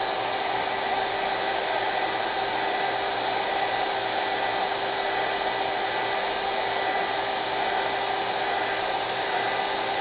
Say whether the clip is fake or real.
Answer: real